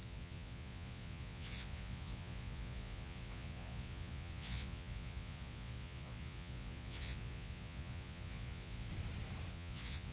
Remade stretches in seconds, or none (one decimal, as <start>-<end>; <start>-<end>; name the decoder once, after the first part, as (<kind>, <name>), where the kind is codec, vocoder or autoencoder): 0.0-8.9 (vocoder, Vocos); 9.5-10.1